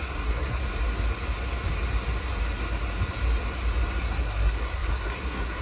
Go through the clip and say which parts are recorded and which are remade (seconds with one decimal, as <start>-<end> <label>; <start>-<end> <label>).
0.0-0.6 remade; 0.6-4.0 recorded; 4.0-5.6 remade